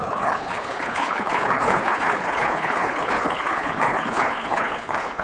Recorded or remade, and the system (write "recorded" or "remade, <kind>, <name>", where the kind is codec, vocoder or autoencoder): remade, codec, HILCodec